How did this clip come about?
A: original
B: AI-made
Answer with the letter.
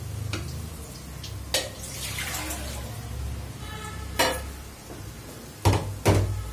A